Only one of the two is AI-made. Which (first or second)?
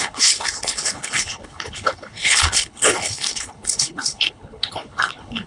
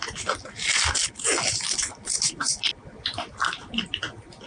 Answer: first